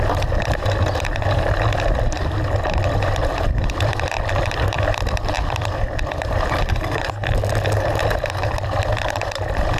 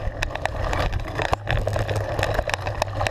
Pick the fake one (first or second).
first